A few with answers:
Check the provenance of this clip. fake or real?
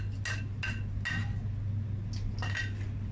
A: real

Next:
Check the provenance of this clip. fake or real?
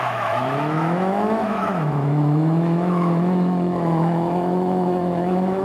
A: fake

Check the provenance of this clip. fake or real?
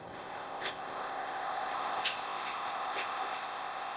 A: fake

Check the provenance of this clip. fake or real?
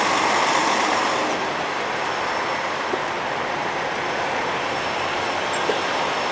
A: real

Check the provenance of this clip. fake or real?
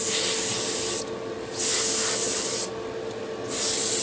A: real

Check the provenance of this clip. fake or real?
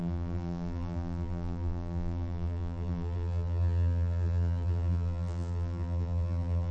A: fake